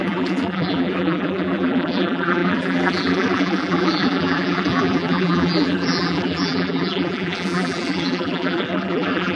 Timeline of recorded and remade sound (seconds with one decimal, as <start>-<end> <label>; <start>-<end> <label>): 0.0-9.4 remade